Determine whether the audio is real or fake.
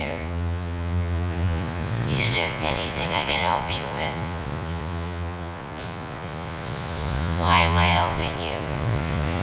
fake